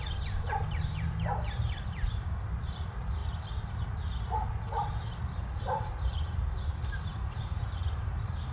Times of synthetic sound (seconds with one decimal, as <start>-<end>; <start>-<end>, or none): 0.0-3.2; 5.1-8.5